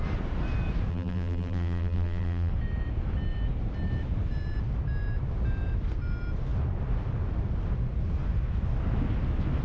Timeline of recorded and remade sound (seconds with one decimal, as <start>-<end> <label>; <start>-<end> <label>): 0.0-0.9 recorded; 0.9-2.5 remade; 2.5-9.6 recorded